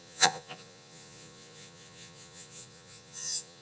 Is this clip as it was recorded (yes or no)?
no